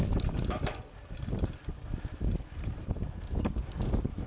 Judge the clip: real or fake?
real